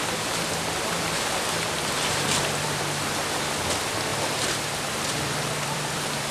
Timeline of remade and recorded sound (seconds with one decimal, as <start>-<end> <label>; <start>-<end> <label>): 0.0-2.8 remade; 2.8-4.1 recorded; 4.1-6.3 remade